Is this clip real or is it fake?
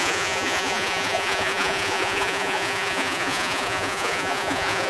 fake